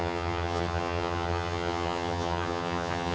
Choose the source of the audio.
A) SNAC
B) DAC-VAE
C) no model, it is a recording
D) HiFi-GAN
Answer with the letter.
D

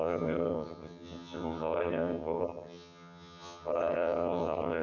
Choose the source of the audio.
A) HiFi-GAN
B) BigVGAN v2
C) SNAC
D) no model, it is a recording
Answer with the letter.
A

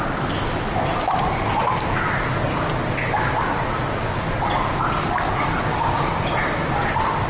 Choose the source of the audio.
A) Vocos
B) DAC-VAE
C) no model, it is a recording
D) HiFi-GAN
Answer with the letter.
C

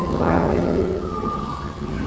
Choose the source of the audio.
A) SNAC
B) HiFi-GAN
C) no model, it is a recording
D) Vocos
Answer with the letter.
B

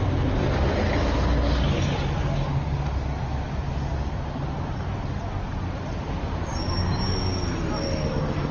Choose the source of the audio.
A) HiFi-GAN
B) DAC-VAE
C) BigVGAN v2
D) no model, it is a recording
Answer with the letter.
D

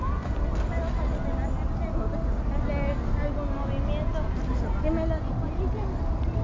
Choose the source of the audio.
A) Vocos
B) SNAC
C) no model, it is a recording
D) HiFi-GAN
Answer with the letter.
C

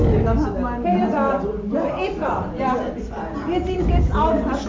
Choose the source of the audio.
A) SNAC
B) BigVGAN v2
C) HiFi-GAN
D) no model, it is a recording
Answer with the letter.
D